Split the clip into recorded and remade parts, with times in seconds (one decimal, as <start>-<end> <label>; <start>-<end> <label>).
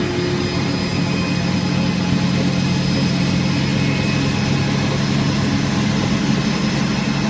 0.0-7.3 recorded